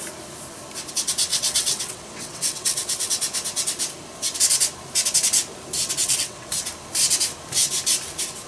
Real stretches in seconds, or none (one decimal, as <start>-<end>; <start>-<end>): 0.0-1.3; 3.1-6.0; 6.5-8.5